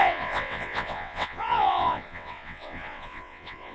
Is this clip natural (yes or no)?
no